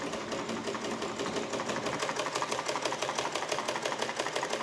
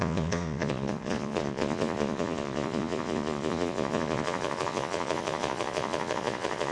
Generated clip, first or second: second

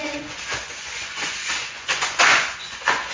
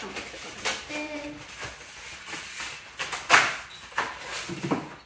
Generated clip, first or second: first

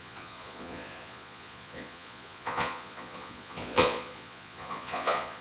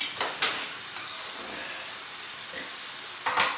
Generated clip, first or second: first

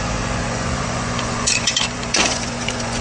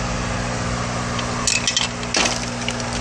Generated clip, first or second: first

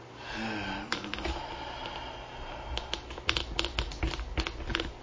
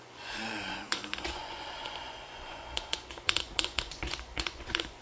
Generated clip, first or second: second